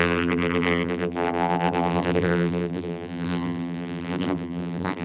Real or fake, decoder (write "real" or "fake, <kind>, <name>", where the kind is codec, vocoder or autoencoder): fake, vocoder, BigVGAN v2